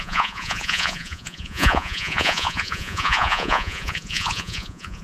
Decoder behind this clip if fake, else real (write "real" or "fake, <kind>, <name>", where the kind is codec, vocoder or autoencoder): fake, vocoder, Vocos